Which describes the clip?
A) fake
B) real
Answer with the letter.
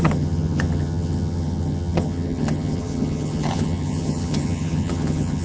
A